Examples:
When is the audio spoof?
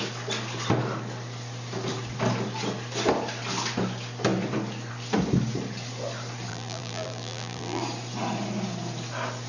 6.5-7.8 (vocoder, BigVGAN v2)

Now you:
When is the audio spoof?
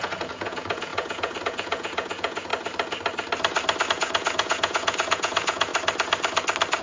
0.0-2.5 (vocoder, Vocos); 3.9-5.7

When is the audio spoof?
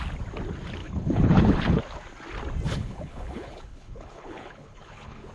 0.8-1.8 (codec, HILCodec); 2.7-5.3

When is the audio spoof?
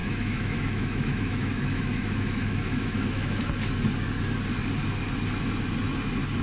0.0-3.5 (autoencoder, DAC-VAE)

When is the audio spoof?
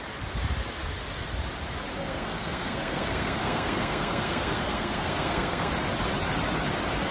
2.0-5.7 (codec, SNAC)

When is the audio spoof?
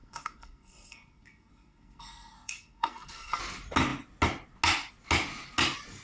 0.0-3.4 (codec, SNAC)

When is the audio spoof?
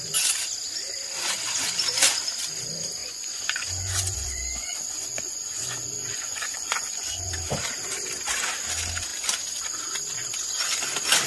3.0-7.3 (vocoder, Vocos)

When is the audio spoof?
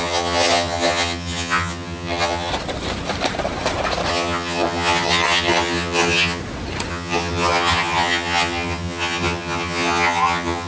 0.0-2.5 (vocoder, HiFi-GAN); 4.1-6.4; 6.9-10.7